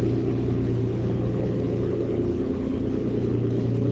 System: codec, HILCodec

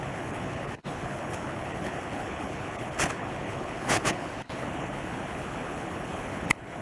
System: codec, HILCodec